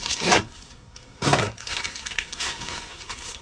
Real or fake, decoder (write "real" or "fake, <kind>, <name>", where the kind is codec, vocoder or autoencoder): fake, codec, SNAC